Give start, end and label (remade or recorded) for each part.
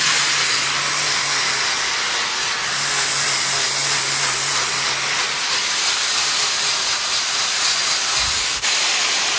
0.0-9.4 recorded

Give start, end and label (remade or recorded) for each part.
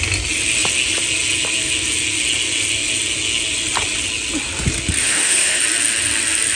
0.0-5.0 recorded; 5.0-5.6 remade; 5.6-6.6 recorded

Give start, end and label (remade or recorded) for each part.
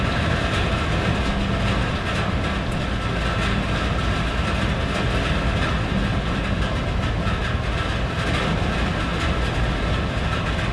0.0-10.7 recorded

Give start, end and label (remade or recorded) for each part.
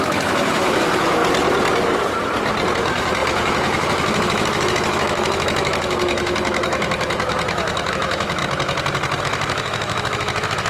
0.0-1.2 remade; 1.2-2.7 recorded; 2.7-8.4 remade; 8.4-9.2 recorded; 9.2-10.7 remade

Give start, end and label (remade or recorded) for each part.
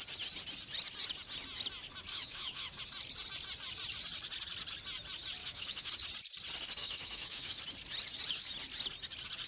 0.0-2.1 recorded; 2.1-2.8 remade; 2.8-5.4 recorded; 5.4-5.9 remade; 5.9-6.8 recorded; 6.8-7.6 remade; 7.6-9.5 recorded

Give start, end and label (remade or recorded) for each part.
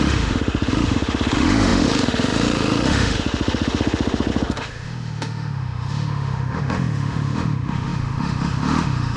0.0-9.2 remade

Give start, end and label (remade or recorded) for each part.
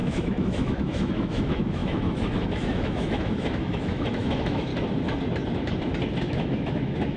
0.0-4.7 remade; 4.7-6.3 recorded; 6.3-7.2 remade